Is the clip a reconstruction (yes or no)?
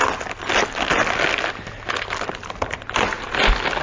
no